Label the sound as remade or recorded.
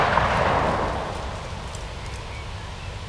recorded